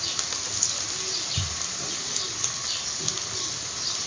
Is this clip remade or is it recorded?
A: remade